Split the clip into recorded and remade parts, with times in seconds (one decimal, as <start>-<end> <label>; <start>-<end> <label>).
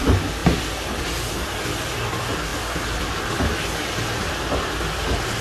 0.0-5.4 recorded